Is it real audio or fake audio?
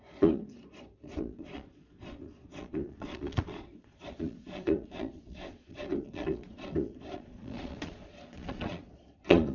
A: fake